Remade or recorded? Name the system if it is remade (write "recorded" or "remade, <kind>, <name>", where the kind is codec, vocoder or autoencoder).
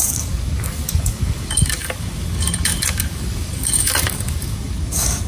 remade, codec, DAC